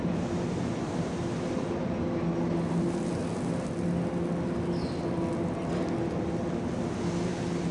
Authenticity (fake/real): real